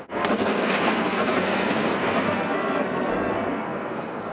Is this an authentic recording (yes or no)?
no